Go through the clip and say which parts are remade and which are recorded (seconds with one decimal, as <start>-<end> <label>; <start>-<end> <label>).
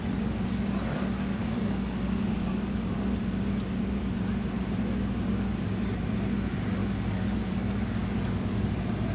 0.0-1.4 recorded; 1.4-3.2 remade; 3.2-6.8 recorded; 6.8-8.6 remade; 8.6-9.1 recorded